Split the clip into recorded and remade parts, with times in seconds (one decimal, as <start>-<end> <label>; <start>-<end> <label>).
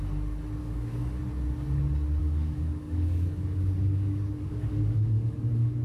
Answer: 0.0-0.6 recorded; 0.6-1.2 remade; 1.2-2.2 recorded; 2.2-5.8 remade